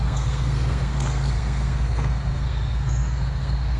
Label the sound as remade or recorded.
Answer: remade